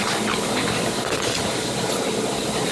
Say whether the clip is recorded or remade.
recorded